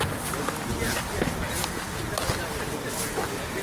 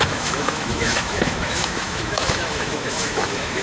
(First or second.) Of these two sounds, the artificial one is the second